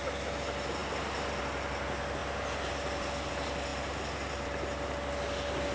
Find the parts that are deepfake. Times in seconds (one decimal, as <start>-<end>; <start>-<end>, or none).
none